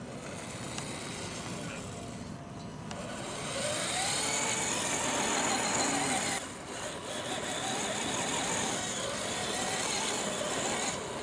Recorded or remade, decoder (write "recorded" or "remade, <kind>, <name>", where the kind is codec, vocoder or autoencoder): recorded